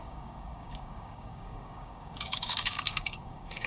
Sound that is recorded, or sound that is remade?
remade